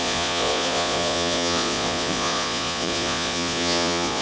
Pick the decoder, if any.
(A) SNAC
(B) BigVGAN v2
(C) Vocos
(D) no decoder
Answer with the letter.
C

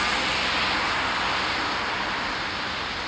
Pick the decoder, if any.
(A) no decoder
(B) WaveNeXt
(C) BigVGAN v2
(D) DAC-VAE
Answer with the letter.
A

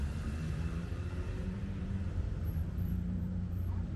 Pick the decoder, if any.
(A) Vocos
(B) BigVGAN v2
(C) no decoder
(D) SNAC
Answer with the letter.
B